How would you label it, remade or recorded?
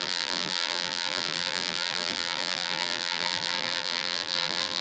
remade